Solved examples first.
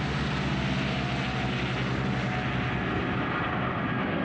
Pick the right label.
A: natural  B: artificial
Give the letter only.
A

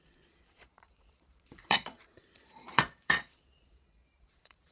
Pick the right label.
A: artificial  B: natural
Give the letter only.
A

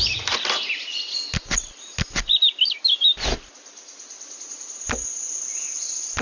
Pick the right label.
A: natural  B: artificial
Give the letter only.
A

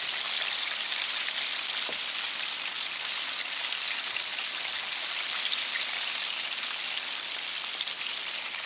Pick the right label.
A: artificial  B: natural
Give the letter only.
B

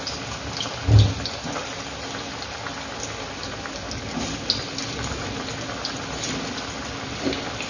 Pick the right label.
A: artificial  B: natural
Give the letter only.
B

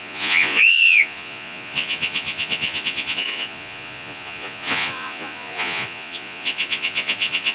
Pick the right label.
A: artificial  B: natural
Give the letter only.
A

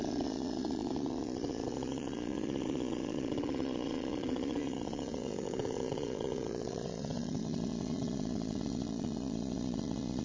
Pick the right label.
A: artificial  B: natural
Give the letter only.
A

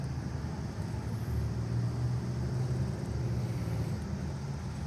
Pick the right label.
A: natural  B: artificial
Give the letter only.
A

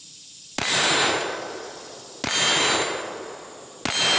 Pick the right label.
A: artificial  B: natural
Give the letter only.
B